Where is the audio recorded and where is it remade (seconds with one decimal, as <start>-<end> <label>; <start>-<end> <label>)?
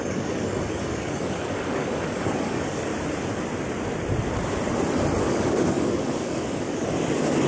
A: 0.0-2.9 remade; 2.9-5.2 recorded; 5.2-7.5 remade